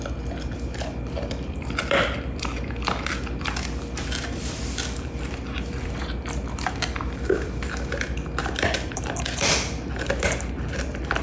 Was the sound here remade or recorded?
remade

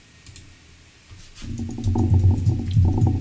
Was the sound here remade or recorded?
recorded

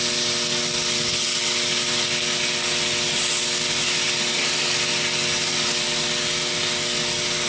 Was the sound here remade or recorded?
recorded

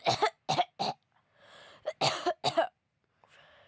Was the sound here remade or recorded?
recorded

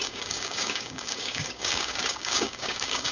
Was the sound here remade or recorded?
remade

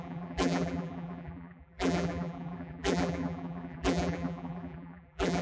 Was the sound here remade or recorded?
remade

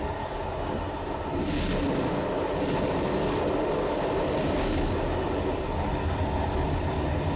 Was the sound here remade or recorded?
recorded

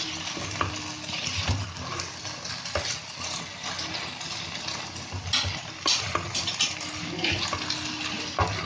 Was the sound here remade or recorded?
recorded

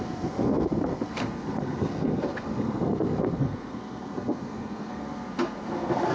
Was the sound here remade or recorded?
remade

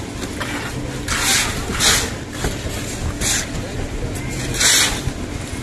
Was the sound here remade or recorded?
recorded